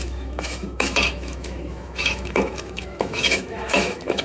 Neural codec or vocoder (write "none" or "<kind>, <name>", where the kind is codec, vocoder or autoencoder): autoencoder, DAC-VAE